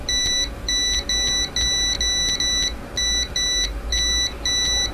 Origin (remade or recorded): recorded